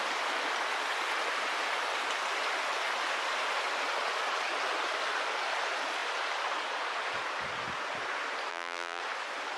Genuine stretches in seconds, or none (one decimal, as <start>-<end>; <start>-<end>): 0.0-8.5; 9.0-9.6